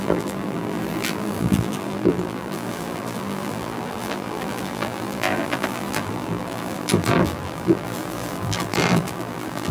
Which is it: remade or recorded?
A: remade